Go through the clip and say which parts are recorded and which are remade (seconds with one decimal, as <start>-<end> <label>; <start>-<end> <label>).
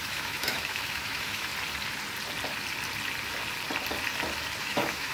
0.0-1.5 remade; 1.5-4.6 recorded; 4.6-5.1 remade